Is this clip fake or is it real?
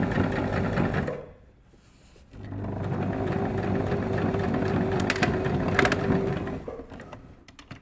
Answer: real